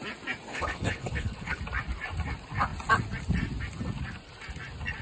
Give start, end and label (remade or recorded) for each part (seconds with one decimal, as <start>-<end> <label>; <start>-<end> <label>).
0.0-0.5 recorded; 0.5-1.6 remade; 1.6-5.0 recorded